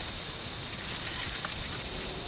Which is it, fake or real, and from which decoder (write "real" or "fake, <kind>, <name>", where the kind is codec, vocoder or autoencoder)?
real